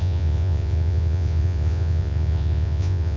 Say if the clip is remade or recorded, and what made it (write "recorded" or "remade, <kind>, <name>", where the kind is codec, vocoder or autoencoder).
remade, vocoder, Vocos